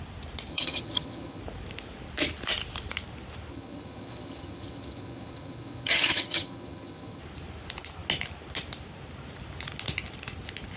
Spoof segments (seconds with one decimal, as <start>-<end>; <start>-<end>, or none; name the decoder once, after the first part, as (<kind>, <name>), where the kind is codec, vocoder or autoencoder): 0.5-1.4 (vocoder, HiFi-GAN); 3.5-7.2